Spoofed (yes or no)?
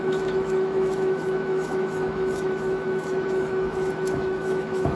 yes